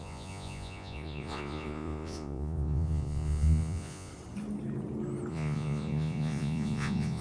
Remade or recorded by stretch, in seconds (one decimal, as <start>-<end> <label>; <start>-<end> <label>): 0.0-4.1 remade; 4.1-5.3 recorded; 5.3-7.2 remade